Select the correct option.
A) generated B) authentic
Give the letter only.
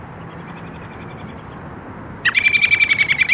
B